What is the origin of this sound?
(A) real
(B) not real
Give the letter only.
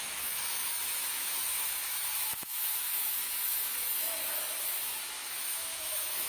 B